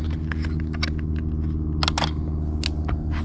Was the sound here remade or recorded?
recorded